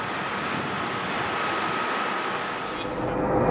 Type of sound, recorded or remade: recorded